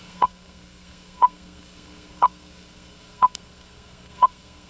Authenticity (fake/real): fake